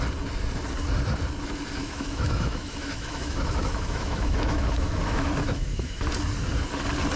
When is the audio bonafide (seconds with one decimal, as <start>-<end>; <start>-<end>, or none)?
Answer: 0.0-1.8; 6.0-7.2